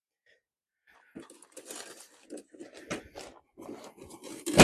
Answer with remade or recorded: recorded